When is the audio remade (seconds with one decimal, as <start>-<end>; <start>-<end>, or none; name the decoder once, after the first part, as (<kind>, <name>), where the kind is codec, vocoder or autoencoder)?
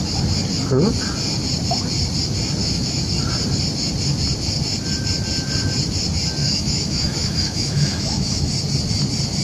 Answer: 2.6-3.1 (autoencoder, DAC-VAE); 6.4-8.5